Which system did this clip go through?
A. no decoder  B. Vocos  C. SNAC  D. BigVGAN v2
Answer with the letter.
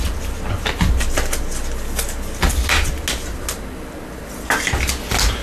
A